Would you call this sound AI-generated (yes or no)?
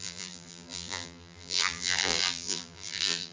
yes